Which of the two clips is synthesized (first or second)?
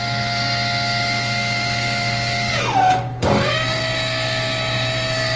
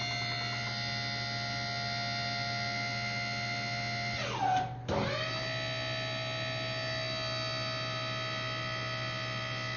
first